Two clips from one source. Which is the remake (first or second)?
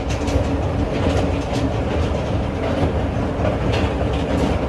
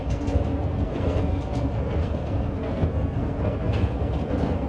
second